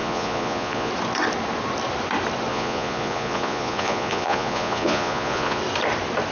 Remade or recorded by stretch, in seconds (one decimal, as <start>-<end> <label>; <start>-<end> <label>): 0.0-0.9 remade; 0.9-2.5 recorded; 2.5-5.6 remade; 5.6-6.3 recorded